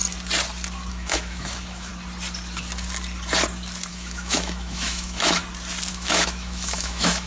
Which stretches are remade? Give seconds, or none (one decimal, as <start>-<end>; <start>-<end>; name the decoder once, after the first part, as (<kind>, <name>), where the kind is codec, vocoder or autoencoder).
0.9-1.9 (autoencoder, DAC-VAE); 3.9-5.4; 5.9-7.3